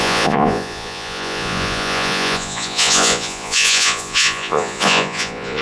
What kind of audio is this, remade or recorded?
remade